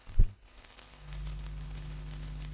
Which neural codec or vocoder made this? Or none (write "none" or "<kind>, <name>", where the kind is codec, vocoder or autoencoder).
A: codec, HILCodec